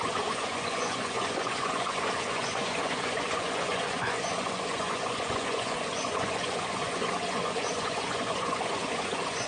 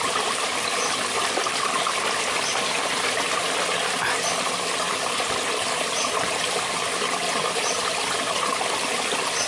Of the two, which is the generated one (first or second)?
first